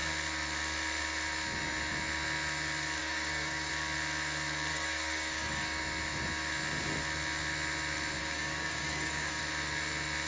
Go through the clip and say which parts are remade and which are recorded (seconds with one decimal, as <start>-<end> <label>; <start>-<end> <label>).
0.0-3.0 recorded; 3.0-3.7 remade; 3.7-4.7 recorded; 4.7-5.8 remade; 5.8-8.2 recorded; 8.2-9.4 remade; 9.4-10.3 recorded